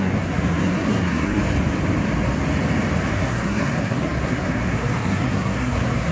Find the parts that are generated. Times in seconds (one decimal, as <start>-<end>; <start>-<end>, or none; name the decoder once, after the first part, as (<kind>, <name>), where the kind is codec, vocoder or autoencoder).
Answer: 0.0-1.4 (codec, SNAC); 3.1-6.1